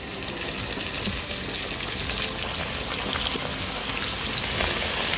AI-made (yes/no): no